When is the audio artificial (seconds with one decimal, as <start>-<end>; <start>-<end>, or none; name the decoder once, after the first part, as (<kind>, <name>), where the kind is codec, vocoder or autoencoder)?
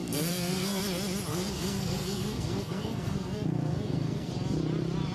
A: 0.0-0.8 (codec, SNAC); 1.3-4.3